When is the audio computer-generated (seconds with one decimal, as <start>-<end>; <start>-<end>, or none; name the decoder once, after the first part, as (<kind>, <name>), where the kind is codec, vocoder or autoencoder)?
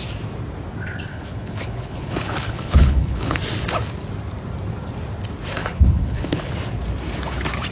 1.1-3.4 (codec, HILCodec); 5.6-6.5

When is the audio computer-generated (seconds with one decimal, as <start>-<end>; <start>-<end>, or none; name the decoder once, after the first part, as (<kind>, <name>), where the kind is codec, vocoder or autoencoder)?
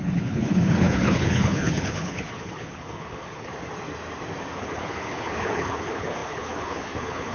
0.0-3.5 (codec, HILCodec); 4.6-7.3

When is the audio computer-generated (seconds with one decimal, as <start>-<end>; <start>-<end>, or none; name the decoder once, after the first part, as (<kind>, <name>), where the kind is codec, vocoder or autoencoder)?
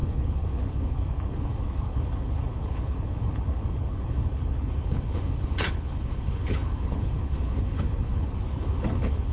0.0-9.3 (codec, HILCodec)